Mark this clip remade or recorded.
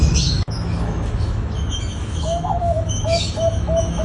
remade